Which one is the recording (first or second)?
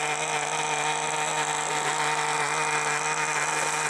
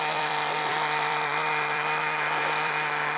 first